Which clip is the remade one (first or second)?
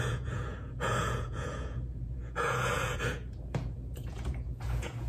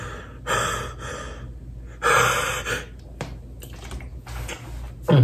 first